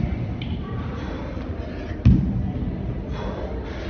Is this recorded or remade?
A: recorded